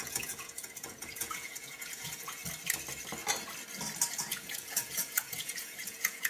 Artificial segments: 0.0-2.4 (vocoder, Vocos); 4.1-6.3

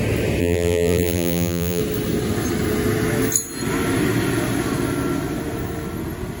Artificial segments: 0.4-1.8 (vocoder, BigVGAN v2)

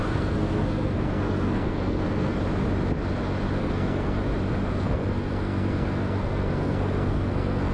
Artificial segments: 0.0-2.4 (codec, SNAC); 3.6-4.2; 4.7-7.7

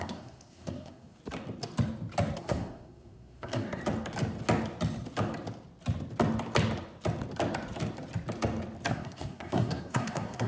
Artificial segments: 0.0-1.2 (codec, SNAC); 2.4-3.8; 8.9-10.5

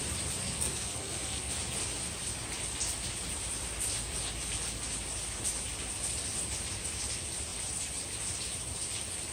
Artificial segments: 0.4-1.5 (codec, SNAC)

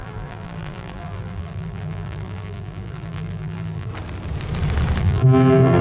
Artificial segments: 0.0-3.9 (vocoder, BigVGAN v2); 5.0-5.8